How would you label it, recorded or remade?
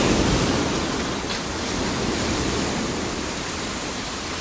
recorded